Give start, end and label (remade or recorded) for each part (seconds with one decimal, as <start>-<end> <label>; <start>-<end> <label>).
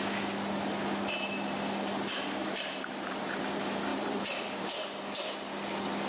0.0-2.4 recorded; 2.4-3.4 remade; 3.4-3.9 recorded; 3.9-4.6 remade; 4.6-6.1 recorded